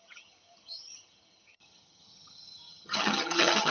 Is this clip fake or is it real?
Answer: fake